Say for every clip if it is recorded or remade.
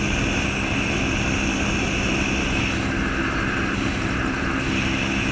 recorded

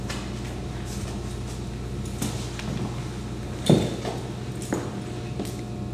recorded